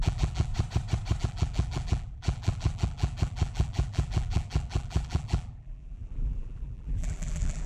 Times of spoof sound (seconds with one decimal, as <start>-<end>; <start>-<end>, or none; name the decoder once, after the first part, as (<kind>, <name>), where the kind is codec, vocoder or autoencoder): 0.0-0.5 (vocoder, BigVGAN v2); 1.2-7.7